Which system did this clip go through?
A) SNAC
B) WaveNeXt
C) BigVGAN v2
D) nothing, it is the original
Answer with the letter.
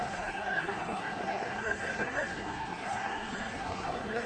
A